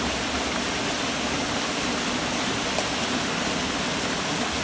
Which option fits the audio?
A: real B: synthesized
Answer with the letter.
A